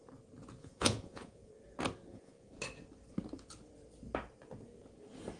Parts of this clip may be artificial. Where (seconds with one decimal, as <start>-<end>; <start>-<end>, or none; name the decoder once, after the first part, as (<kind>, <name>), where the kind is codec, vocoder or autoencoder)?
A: 0.6-1.5 (vocoder, Vocos); 2.1-2.6